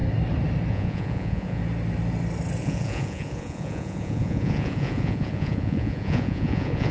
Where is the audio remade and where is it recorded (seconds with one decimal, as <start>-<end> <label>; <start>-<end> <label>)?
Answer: 0.0-0.7 recorded; 0.7-1.6 remade; 1.6-2.6 recorded; 2.6-6.9 remade